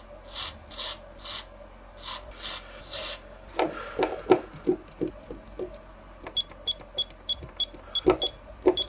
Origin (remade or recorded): recorded